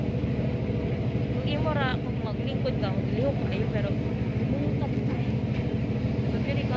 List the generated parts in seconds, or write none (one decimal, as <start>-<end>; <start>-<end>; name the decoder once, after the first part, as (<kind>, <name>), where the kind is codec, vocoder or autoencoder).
none